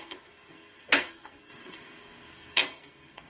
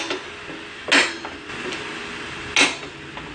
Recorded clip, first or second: second